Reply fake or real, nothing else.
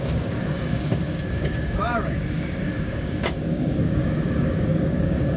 fake